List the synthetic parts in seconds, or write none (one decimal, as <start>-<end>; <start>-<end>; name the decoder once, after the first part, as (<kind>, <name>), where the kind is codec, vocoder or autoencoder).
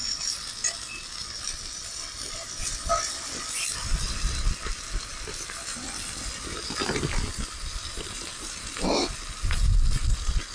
none